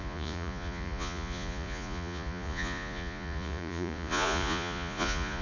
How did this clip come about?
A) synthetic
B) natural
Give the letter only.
A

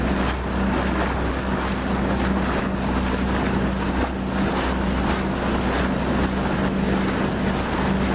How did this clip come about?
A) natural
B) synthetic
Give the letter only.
A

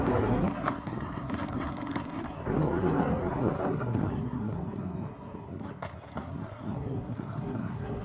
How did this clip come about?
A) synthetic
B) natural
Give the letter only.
A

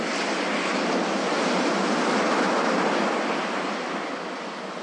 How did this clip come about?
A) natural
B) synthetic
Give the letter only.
A